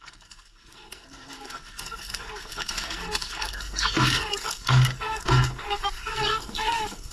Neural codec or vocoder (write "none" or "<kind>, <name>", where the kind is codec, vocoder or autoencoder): codec, SNAC